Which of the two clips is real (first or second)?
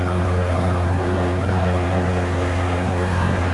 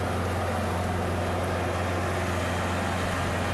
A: second